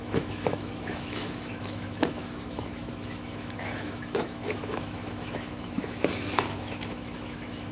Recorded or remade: remade